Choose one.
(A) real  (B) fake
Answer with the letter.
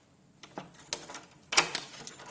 A